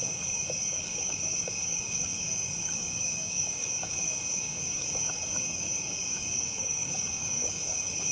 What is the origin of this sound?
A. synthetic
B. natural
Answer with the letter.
A